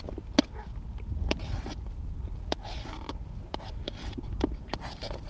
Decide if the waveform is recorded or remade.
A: recorded